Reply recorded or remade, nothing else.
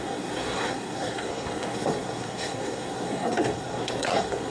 remade